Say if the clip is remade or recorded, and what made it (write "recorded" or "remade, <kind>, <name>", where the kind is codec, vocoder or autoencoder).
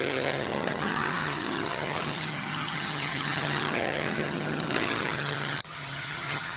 remade, vocoder, HiFi-GAN